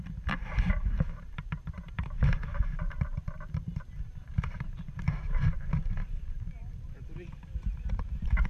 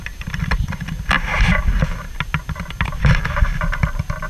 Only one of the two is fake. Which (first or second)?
first